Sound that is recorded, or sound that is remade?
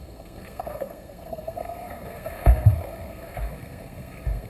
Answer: remade